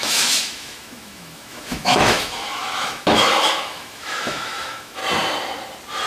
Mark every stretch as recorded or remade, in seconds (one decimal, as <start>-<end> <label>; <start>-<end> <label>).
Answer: 0.0-5.0 remade; 5.0-6.1 recorded